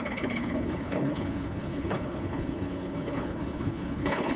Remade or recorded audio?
remade